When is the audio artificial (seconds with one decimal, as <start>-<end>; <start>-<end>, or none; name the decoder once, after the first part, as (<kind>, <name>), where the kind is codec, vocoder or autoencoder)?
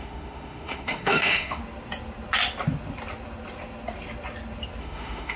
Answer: 0.0-1.6 (autoencoder, DAC-VAE); 4.8-5.4